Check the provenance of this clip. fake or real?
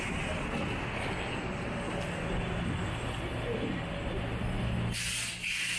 real